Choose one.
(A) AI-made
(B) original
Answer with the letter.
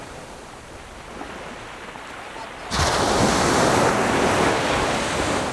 B